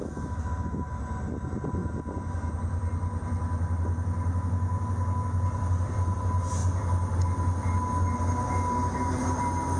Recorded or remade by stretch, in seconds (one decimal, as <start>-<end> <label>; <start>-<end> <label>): 0.0-1.0 remade; 1.0-9.8 recorded